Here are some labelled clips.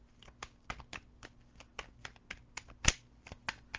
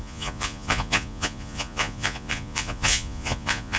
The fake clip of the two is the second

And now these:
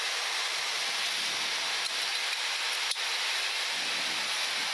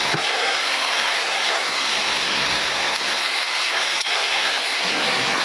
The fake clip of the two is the second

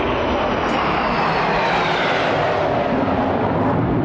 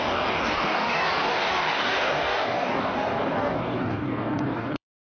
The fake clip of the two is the second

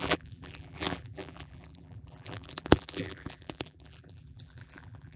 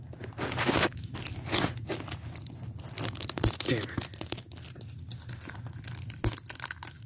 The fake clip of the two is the first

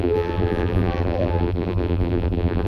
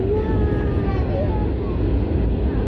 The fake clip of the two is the first